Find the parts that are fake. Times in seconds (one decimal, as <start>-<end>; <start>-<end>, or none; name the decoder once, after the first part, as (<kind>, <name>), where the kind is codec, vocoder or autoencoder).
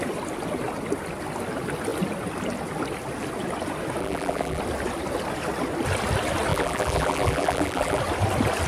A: 4.0-4.6 (vocoder, BigVGAN v2); 6.5-8.0